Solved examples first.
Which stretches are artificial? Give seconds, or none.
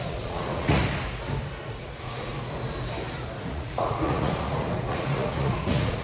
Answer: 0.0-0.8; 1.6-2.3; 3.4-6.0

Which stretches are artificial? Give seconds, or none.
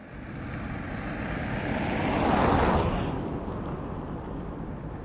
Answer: 0.0-5.0